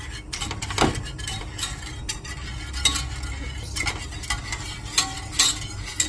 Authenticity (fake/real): real